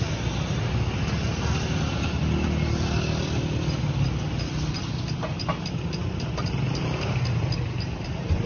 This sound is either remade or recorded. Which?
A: recorded